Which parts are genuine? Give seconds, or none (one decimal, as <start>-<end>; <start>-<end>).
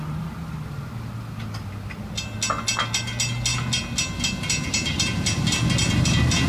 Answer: 0.0-6.5